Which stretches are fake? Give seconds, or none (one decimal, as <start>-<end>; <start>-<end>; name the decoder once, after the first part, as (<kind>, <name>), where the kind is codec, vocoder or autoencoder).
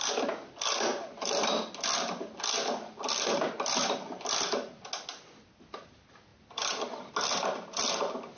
none